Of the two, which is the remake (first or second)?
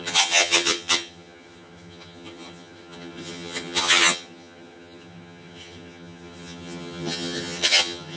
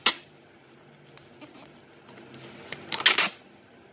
first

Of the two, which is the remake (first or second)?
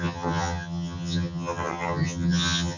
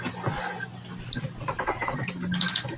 first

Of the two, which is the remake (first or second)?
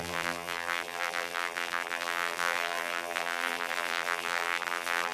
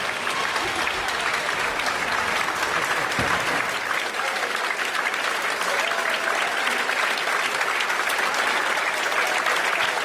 first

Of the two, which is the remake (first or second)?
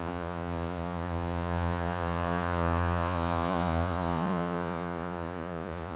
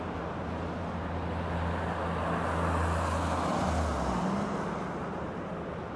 first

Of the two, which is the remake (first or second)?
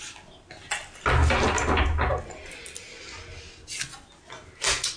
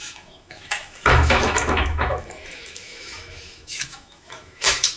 second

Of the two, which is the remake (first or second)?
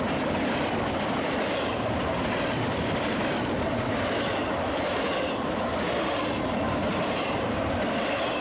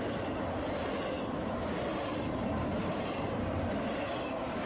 first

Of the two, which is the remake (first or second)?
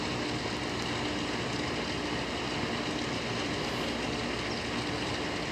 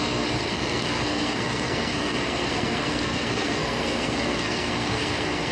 second